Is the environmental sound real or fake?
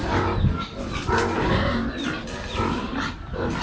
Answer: real